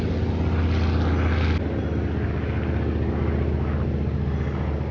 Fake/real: real